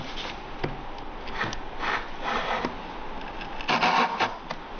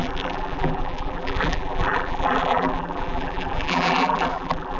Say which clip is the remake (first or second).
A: second